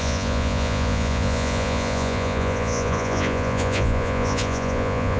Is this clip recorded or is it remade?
remade